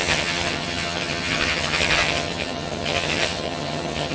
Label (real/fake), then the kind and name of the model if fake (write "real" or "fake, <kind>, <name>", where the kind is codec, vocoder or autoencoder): fake, vocoder, HiFi-GAN